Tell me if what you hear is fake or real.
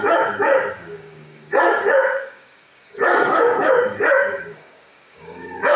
fake